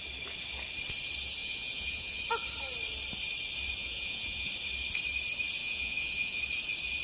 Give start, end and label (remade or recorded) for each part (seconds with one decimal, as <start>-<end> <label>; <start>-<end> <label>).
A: 0.0-1.4 recorded; 1.4-2.2 remade; 2.2-3.8 recorded; 3.8-4.5 remade; 4.5-5.6 recorded; 5.6-6.4 remade; 6.4-7.0 recorded